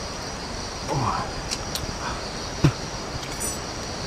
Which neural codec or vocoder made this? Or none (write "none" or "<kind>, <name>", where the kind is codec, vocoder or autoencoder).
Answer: none